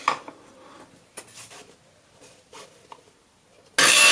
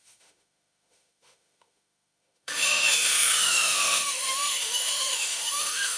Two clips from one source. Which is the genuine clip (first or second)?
first